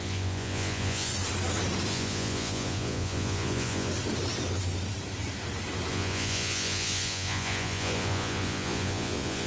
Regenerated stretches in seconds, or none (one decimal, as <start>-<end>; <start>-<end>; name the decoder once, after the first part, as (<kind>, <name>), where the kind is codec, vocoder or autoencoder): 0.0-1.1 (vocoder, Vocos); 1.9-3.9; 5.9-9.5